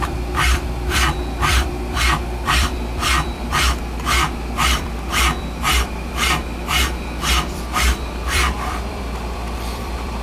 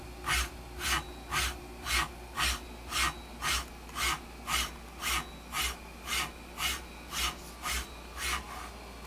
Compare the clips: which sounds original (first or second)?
second